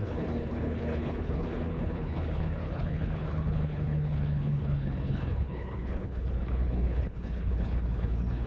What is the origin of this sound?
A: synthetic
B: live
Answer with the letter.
A